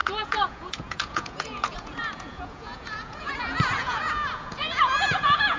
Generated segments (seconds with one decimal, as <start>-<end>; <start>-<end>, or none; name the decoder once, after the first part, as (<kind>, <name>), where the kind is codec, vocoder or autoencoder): 0.0-5.6 (vocoder, Vocos)

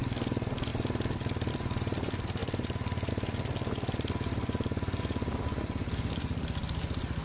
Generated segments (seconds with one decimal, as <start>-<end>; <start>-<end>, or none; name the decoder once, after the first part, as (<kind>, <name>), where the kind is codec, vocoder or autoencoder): 0.7-1.5 (vocoder, BigVGAN v2); 2.4-3.1; 5.3-5.9

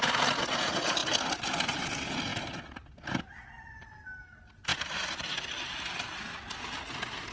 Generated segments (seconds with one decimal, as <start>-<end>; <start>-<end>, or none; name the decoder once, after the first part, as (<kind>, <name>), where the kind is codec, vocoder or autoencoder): none